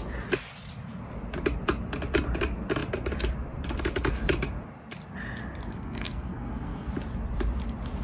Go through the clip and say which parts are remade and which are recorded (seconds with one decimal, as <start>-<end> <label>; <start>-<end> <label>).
0.0-5.7 recorded; 5.7-6.9 remade; 6.9-8.0 recorded